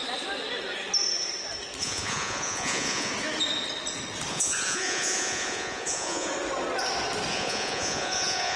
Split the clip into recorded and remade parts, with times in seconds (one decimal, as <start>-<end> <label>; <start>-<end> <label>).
0.0-1.8 recorded; 1.8-3.1 remade; 3.1-4.3 recorded; 4.3-6.3 remade; 6.3-7.3 recorded; 7.3-8.6 remade